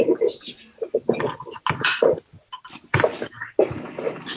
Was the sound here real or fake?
real